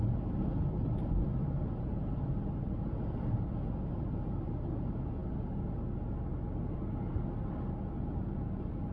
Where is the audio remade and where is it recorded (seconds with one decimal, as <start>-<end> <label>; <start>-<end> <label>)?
0.0-0.5 recorded; 0.5-3.3 remade; 3.3-8.9 recorded